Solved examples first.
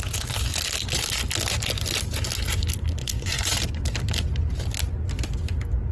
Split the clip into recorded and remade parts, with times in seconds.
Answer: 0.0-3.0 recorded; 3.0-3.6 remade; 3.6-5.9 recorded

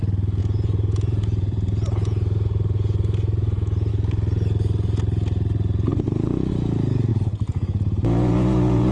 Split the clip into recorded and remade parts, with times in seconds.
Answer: 0.0-0.4 recorded; 0.4-3.9 remade; 3.9-5.9 recorded; 5.9-6.5 remade; 6.5-7.1 recorded; 7.1-8.9 remade

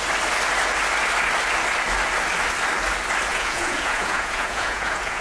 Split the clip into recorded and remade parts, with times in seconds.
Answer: 0.0-3.3 recorded; 3.3-5.2 remade

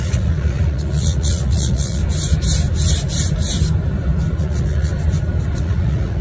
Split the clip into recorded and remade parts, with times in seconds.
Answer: 0.0-2.0 remade; 2.0-4.4 recorded; 4.4-4.9 remade; 4.9-5.6 recorded; 5.6-6.2 remade